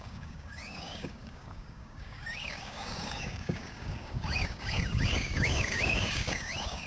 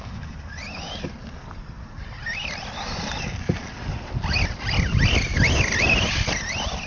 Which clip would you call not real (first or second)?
first